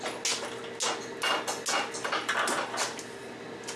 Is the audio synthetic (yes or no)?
no